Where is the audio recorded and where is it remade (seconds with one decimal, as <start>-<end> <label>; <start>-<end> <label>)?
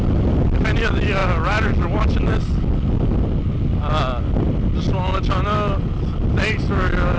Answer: 0.0-7.2 recorded